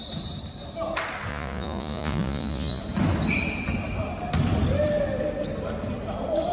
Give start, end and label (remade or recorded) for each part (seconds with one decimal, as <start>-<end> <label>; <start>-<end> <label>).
0.0-1.3 recorded; 1.3-2.8 remade; 2.8-6.5 recorded